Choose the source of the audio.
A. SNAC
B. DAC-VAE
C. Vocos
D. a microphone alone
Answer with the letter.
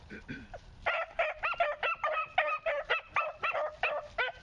D